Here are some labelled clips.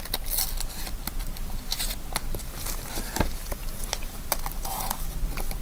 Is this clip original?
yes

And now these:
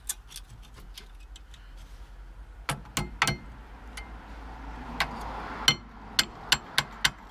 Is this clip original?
yes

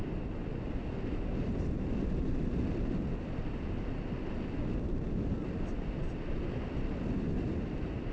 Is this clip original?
yes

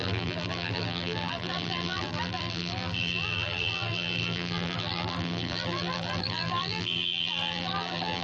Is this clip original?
no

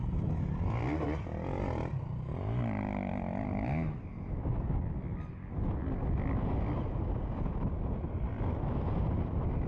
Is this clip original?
yes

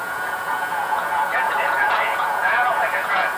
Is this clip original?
no